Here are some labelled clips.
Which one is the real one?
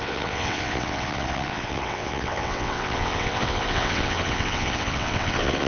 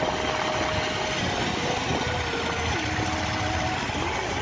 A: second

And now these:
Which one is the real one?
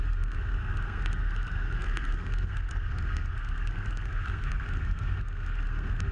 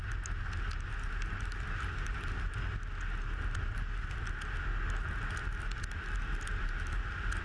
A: second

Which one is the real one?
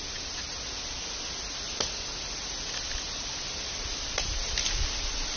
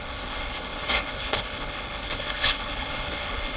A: first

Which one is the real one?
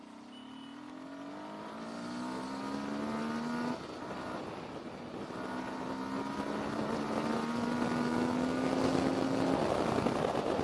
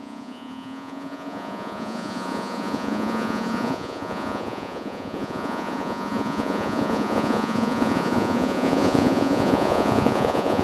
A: first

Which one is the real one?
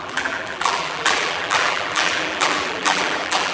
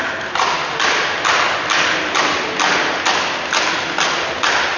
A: second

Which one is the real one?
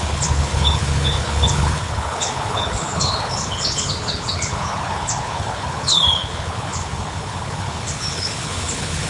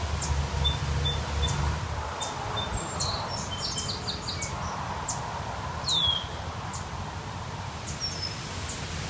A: second